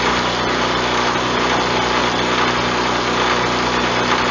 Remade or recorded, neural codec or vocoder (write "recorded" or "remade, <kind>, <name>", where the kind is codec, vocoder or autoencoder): recorded